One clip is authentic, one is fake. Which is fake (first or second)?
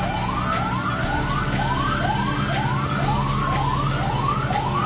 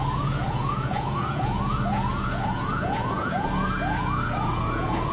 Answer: second